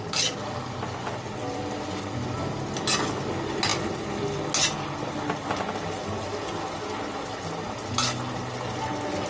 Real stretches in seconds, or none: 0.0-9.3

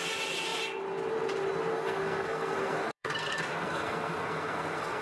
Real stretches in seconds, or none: 0.0-1.7

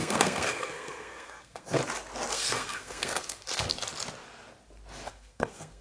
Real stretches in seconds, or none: 1.8-2.3; 3.7-5.1

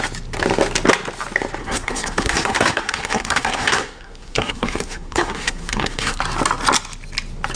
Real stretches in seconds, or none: 0.0-1.6; 6.2-7.6

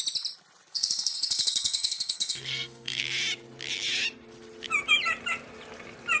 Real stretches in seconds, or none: 0.0-0.7; 3.0-6.2